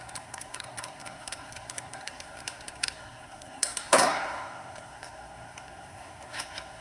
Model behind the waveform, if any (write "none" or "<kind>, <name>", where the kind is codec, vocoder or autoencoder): codec, SNAC